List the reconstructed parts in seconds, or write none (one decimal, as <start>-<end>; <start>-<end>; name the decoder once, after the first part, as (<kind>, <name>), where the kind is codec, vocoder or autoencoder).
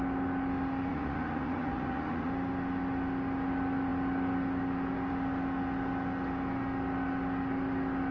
0.9-2.3 (vocoder, Vocos)